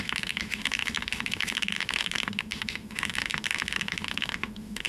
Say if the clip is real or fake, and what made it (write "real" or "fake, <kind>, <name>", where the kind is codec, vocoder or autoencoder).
fake, autoencoder, DAC-VAE